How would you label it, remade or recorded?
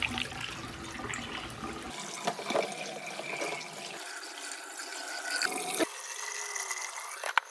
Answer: recorded